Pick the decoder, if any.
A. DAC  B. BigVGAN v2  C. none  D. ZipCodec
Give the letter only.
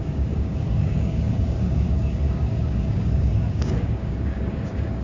A